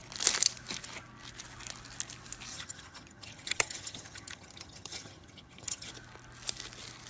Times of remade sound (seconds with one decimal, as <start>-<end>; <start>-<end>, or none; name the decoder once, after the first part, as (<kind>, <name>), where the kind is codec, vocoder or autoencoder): 2.5-5.9 (vocoder, HiFi-GAN)